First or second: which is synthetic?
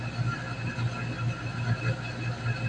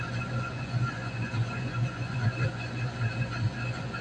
second